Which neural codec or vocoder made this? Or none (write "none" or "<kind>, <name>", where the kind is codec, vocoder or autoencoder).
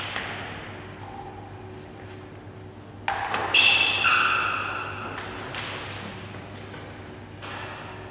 none